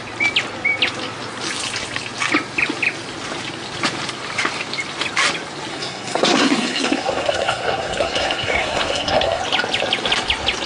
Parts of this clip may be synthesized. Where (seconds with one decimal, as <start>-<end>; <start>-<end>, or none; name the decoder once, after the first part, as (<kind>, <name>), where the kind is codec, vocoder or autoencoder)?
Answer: 5.7-9.4 (codec, SNAC)

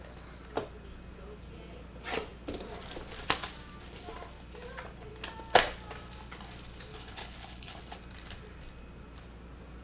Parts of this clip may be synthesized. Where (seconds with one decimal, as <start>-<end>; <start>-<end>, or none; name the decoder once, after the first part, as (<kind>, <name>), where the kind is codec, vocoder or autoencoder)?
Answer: 6.9-7.8 (codec, HILCodec)

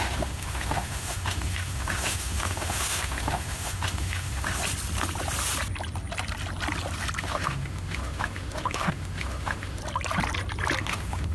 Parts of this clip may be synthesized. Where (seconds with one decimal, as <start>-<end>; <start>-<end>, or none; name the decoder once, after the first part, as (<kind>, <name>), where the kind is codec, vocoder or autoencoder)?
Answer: 0.0-4.6 (autoencoder, DAC-VAE); 7.2-9.8; 10.8-11.3

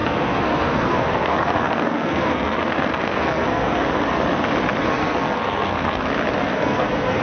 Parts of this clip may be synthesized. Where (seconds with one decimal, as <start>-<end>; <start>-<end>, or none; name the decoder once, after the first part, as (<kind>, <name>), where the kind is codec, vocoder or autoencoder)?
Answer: 0.0-3.9 (codec, SNAC); 4.8-6.0; 6.4-7.2

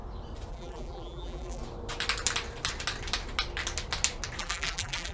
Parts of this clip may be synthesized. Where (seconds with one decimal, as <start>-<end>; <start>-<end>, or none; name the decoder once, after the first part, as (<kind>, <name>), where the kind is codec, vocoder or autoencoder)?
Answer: 0.5-1.6 (vocoder, BigVGAN v2); 4.4-5.1

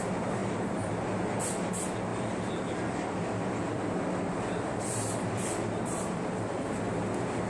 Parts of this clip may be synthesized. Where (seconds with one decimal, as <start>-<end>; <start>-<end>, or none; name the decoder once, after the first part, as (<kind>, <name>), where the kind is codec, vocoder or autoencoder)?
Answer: 0.4-0.9 (vocoder, BigVGAN v2); 2.1-6.6

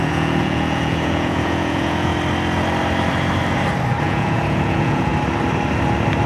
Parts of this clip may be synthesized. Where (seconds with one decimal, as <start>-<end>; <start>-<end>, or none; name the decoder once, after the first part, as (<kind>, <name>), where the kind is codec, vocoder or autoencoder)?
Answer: 0.0-2.1 (vocoder, Vocos); 4.0-5.1